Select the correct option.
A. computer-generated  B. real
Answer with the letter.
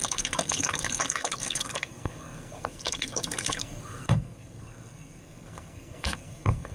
A